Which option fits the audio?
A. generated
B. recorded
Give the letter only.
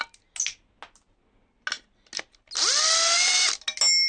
B